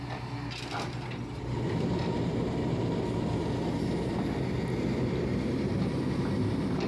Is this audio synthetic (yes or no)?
no